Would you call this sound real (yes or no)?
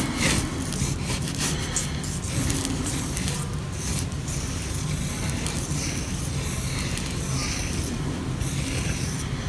yes